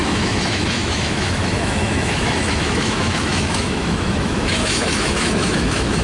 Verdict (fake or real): fake